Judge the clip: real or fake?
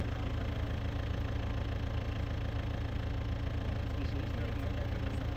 real